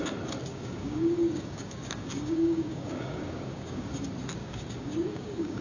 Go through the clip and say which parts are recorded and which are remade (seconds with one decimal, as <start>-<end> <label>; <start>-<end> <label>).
0.0-0.5 recorded; 0.5-3.9 remade; 3.9-4.4 recorded; 4.4-5.6 remade